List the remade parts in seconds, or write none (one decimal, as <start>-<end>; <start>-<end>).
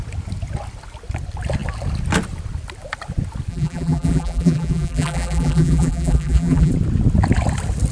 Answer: 3.5-6.7